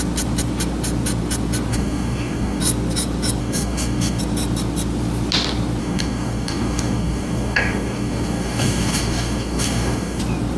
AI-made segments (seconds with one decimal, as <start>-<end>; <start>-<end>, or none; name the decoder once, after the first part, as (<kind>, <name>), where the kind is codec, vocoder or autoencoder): 1.7-2.6 (codec, DAC); 3.4-4.2; 5.8-10.2